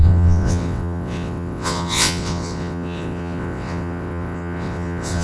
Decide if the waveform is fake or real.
fake